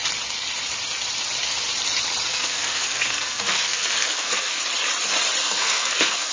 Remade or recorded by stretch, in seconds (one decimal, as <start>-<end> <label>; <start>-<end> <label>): 0.0-2.3 recorded; 2.3-4.6 remade; 4.6-5.4 recorded; 5.4-6.3 remade